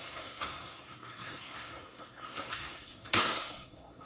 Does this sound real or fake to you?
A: fake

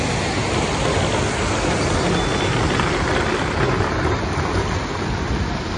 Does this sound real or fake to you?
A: real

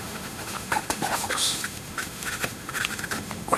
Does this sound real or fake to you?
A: fake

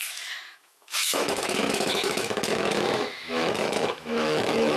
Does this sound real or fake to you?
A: fake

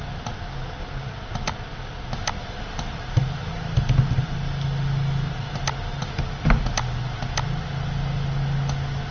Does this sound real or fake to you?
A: real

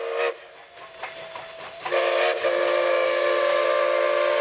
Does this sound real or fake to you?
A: real